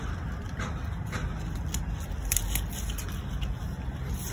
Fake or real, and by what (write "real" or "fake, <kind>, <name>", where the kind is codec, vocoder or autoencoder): real